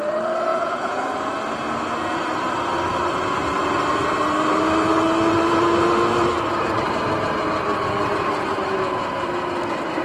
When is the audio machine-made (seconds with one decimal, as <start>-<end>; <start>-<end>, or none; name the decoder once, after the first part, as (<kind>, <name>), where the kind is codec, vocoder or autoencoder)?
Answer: 0.5-1.0 (vocoder, Vocos)